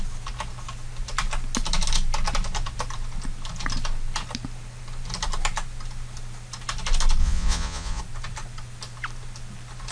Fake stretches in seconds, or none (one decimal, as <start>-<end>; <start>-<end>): 7.2-8.0